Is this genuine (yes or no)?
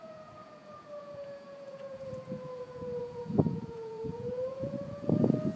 no